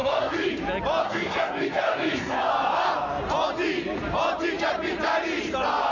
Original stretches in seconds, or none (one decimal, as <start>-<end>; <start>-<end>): 0.5-1.0; 2.5-5.9